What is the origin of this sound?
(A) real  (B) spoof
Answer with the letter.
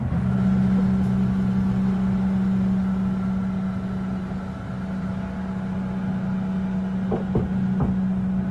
A